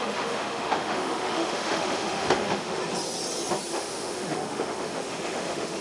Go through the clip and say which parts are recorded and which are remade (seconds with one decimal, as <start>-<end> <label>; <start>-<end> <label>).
0.0-2.8 remade; 2.8-3.7 recorded; 3.7-5.8 remade